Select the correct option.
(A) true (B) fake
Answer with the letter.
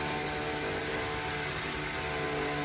A